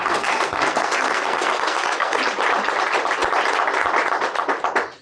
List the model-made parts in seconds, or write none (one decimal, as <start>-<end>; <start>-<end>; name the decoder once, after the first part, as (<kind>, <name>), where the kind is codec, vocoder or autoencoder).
0.0-2.2 (codec, SNAC)